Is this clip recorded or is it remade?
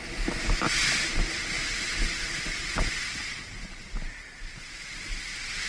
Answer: recorded